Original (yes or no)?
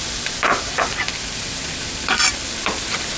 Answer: yes